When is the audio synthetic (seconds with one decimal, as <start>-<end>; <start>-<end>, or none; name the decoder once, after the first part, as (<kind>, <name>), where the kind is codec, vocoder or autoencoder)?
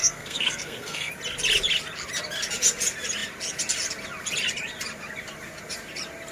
0.0-1.1 (codec, SNAC)